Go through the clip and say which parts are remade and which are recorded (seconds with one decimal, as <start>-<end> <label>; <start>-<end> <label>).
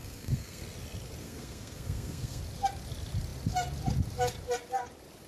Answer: 0.0-0.6 remade; 0.6-1.2 recorded; 1.2-2.4 remade; 2.4-5.3 recorded